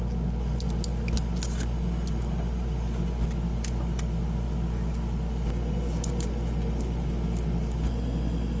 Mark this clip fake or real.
real